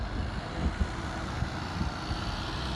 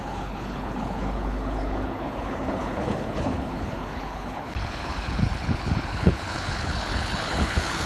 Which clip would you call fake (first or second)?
second